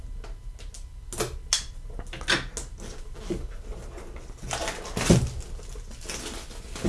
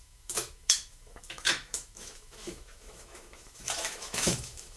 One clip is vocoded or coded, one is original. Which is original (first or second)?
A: first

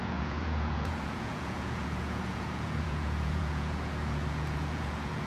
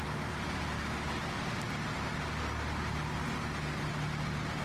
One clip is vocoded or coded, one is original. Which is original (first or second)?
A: second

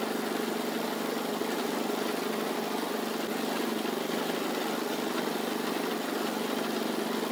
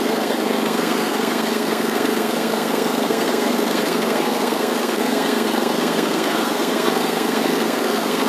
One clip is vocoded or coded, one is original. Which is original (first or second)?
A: first